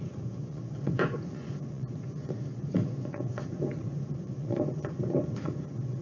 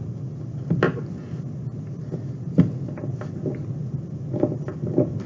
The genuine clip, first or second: second